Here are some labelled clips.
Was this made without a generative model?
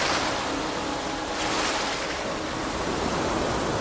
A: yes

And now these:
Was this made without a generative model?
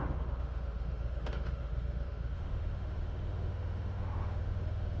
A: no